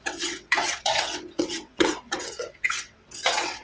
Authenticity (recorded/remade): remade